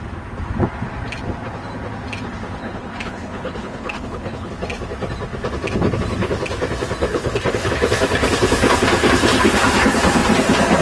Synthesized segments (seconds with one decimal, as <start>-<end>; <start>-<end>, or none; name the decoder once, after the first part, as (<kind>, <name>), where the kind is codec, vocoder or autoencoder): 2.6-4.5 (codec, HILCodec); 7.1-7.7